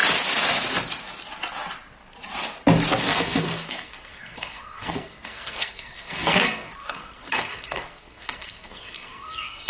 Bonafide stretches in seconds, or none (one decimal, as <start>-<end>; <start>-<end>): 0.0-3.0